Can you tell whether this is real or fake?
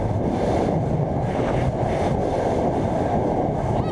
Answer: real